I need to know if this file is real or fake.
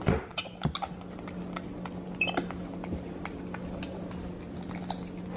real